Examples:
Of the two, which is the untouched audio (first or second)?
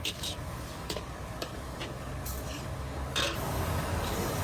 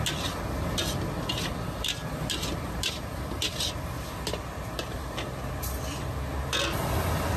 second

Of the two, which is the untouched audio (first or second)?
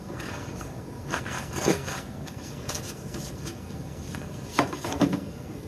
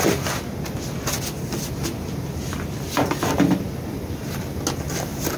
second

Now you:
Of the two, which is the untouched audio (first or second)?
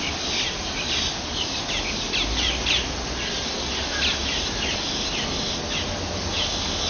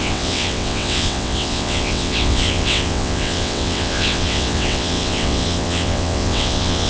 first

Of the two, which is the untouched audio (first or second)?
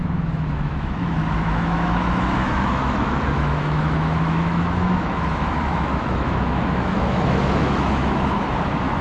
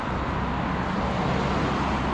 second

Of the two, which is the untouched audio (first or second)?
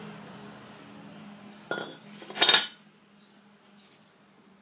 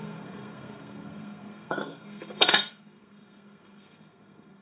first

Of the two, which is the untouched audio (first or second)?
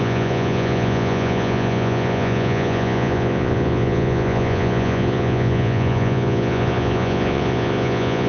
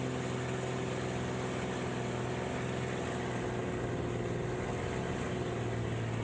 second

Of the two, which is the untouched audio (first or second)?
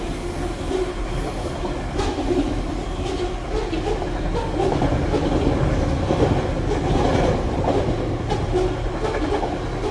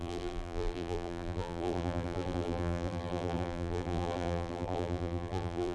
first